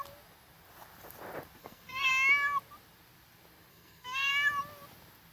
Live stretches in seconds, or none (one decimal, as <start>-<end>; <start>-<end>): 0.0-1.6; 2.1-3.7; 4.3-5.3